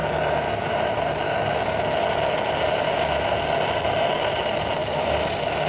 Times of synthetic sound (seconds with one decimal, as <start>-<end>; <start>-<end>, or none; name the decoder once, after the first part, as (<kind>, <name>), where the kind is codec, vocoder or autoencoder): none

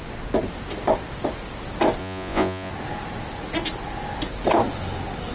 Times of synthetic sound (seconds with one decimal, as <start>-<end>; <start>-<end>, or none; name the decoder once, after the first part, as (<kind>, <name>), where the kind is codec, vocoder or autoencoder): 2.0-2.7 (vocoder, Vocos)

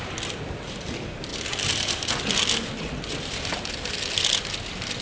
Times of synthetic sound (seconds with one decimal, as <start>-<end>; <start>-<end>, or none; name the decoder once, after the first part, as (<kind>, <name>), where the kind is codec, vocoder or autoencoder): none

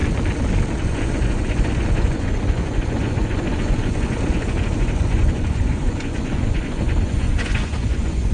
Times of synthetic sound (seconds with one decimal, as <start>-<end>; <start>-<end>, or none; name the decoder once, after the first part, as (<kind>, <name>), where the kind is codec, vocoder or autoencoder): 0.8-8.3 (vocoder, Vocos)

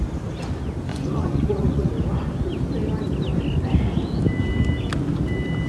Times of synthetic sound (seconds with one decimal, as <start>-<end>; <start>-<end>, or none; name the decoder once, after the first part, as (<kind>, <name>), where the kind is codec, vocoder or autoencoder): 0.9-1.9 (vocoder, Vocos)

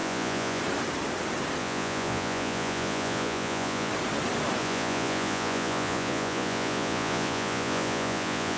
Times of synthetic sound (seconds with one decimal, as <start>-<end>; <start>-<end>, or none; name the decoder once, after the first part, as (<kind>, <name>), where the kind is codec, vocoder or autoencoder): 0.0-0.6 (vocoder, Vocos); 1.6-3.9; 4.6-8.6